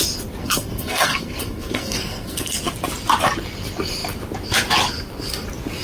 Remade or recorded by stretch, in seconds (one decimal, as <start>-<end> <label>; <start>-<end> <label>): 0.0-0.4 recorded; 0.4-2.6 remade; 2.6-5.8 recorded

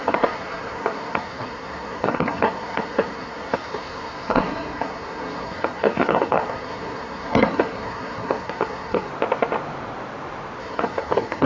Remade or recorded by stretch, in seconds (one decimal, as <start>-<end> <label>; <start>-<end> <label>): 0.0-9.1 remade; 9.1-10.6 recorded; 10.6-11.5 remade

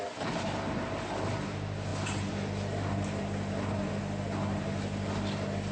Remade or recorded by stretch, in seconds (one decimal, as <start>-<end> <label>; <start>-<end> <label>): 0.0-5.7 recorded

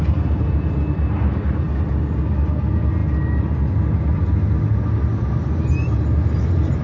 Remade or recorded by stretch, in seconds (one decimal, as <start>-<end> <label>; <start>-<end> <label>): 0.0-6.8 recorded

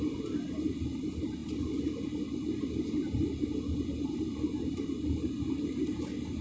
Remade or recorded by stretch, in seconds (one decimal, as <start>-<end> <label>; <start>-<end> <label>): 0.0-6.4 recorded